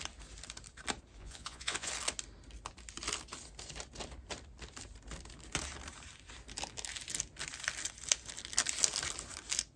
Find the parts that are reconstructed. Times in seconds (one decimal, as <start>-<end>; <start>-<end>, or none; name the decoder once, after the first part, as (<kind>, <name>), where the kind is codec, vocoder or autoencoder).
1.2-1.9 (vocoder, Vocos)